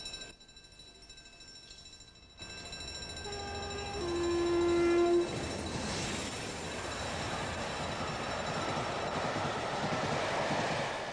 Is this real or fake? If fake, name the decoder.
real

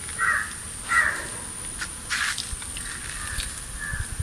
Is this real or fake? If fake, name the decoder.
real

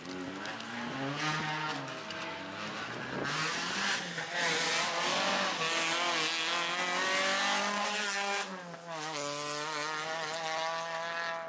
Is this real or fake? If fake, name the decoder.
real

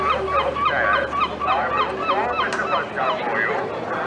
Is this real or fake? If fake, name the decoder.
real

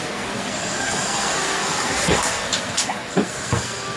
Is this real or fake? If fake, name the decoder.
fake, codec, SNAC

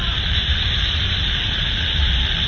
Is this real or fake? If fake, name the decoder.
real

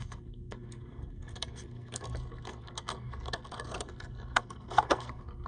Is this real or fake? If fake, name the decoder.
fake, codec, SNAC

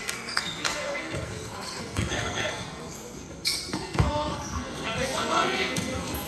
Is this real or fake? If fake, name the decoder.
fake, codec, SNAC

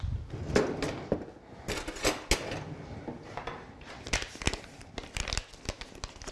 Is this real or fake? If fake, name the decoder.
real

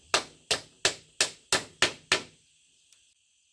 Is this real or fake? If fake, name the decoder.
real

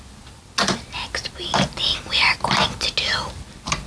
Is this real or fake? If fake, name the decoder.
real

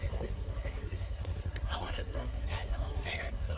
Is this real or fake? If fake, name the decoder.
fake, codec, SNAC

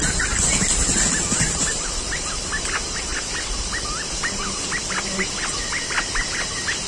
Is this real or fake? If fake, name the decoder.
real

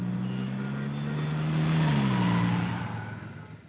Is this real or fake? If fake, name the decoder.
real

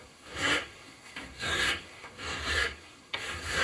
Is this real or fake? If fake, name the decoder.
fake, codec, SNAC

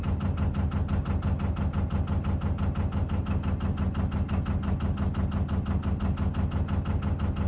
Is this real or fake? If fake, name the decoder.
real